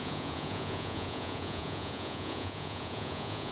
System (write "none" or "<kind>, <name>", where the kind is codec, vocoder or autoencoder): vocoder, Vocos